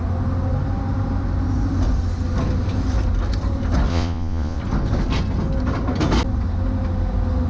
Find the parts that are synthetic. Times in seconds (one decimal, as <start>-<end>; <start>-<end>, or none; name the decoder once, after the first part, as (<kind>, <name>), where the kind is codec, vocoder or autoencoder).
3.9-4.6 (vocoder, Vocos)